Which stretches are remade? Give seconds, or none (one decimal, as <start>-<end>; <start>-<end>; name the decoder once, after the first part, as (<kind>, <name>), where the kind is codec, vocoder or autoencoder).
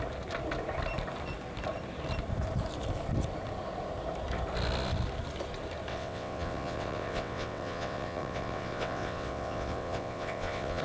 5.9-10.8 (vocoder, WaveNeXt)